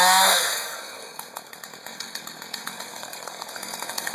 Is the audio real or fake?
fake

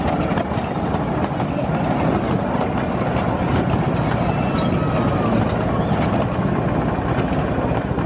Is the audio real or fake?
real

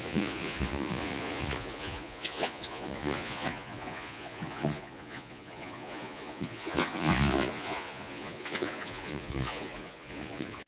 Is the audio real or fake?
fake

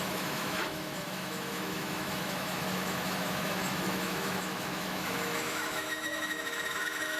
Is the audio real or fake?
fake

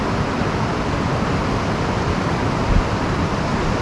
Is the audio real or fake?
real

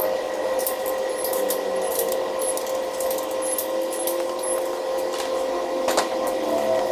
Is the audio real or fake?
real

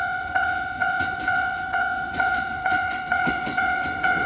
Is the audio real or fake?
fake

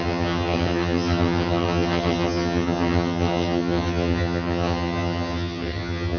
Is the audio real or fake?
fake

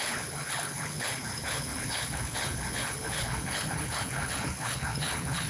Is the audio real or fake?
fake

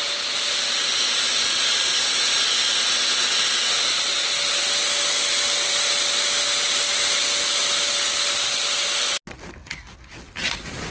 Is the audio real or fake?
real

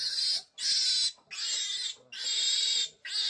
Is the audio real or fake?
real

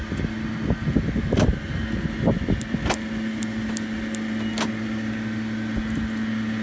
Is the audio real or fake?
real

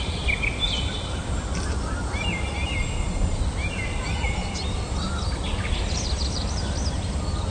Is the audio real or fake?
real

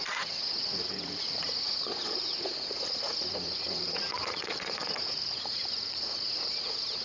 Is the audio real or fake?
fake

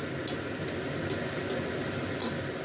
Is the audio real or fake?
real